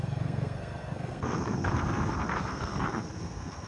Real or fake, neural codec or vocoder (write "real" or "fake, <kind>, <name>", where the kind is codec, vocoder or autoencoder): fake, codec, SNAC